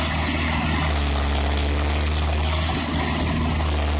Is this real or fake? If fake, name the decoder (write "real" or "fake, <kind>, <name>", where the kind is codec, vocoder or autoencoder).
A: real